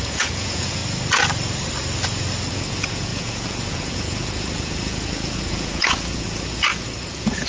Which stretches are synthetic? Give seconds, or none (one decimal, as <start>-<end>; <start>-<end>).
0.0-0.8; 2.5-7.5